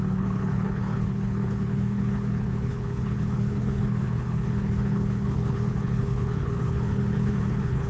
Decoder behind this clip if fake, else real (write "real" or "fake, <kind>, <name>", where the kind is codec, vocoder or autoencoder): fake, codec, HILCodec